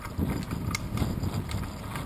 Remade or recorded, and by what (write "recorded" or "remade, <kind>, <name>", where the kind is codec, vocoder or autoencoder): recorded